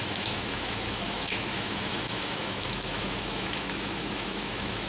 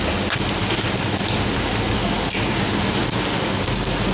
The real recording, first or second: second